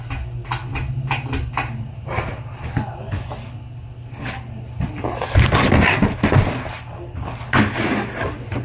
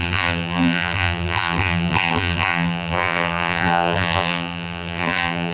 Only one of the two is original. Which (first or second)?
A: first